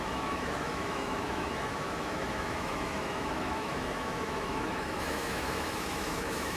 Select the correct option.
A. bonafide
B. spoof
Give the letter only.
B